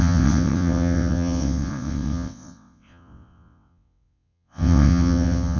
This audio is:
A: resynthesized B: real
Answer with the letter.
A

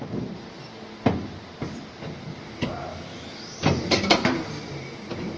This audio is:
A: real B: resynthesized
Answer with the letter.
A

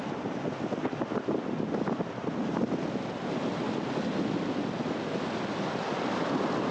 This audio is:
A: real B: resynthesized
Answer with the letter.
A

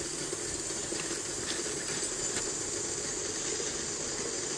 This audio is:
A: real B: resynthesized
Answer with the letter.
A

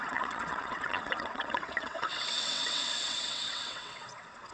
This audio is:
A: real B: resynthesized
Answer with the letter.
B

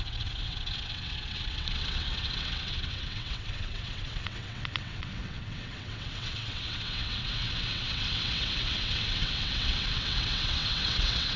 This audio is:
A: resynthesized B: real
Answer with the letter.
A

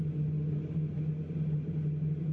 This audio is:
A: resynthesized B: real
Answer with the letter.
B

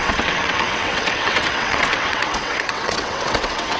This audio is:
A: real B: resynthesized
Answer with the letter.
B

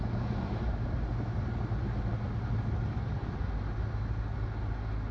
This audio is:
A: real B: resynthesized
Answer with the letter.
A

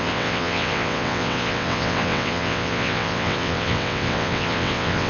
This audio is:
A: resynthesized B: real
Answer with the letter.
A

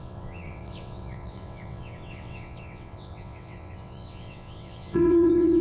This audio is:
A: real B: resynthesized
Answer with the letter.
B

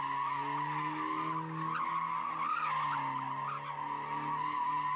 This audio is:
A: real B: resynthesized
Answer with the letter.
A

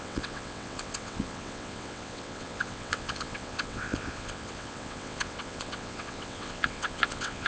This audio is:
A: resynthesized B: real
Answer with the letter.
A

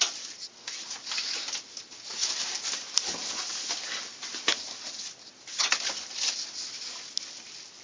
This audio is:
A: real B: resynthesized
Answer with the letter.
A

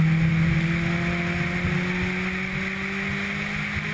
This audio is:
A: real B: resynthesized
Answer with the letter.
A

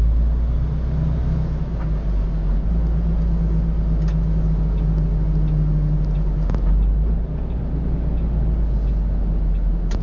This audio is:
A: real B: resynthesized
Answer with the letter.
A